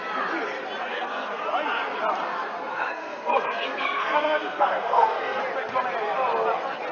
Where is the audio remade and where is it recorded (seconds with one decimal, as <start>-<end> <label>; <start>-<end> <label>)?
0.0-0.9 recorded; 0.9-1.4 remade; 1.4-2.7 recorded; 2.7-5.4 remade; 5.4-6.9 recorded